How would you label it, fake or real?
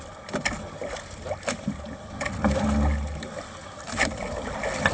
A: real